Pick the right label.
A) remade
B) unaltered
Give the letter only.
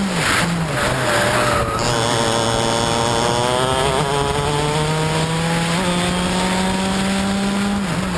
B